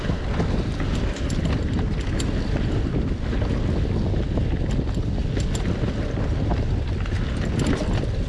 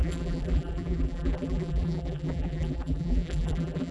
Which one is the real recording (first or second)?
first